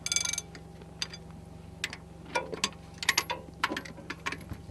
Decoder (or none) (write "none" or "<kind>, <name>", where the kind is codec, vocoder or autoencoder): none